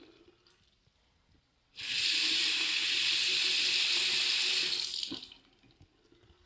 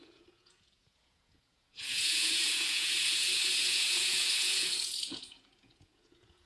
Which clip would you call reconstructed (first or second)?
second